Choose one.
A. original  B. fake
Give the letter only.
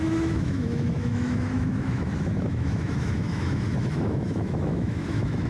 B